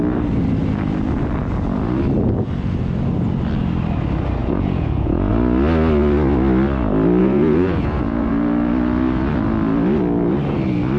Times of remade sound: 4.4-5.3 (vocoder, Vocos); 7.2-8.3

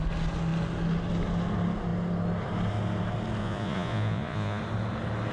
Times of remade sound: 3.4-4.6 (vocoder, Vocos)

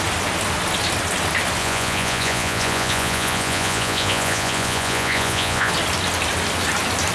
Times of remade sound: 1.6-5.7 (vocoder, Vocos)

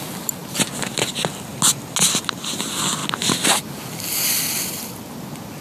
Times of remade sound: none

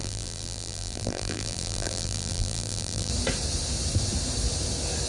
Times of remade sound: 0.0-3.1 (vocoder, BigVGAN v2)

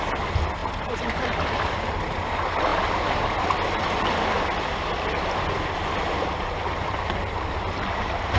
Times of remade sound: none